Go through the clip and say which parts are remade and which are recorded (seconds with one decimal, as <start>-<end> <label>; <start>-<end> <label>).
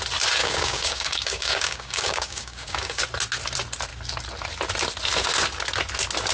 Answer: 0.0-0.4 recorded; 0.4-3.0 remade; 3.0-6.3 recorded